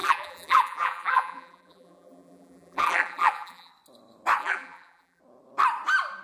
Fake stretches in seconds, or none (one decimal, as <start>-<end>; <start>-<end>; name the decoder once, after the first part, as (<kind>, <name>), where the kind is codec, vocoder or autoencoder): 0.0-3.7 (vocoder, BigVGAN v2); 4.4-5.2